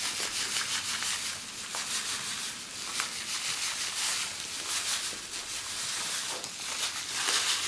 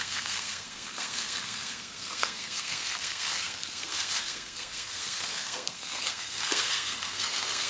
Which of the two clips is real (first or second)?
first